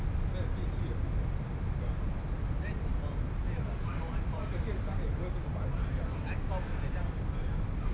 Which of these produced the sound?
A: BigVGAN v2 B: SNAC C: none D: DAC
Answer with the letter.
C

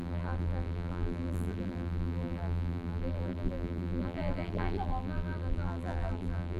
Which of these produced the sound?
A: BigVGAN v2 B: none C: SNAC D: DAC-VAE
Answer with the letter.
A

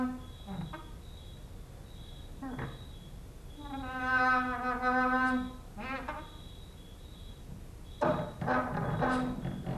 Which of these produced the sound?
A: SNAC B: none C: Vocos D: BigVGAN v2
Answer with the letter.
B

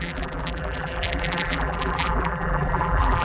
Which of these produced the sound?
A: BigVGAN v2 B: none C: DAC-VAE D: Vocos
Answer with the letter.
A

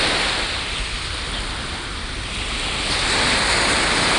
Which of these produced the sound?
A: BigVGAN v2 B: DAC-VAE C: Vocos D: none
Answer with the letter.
D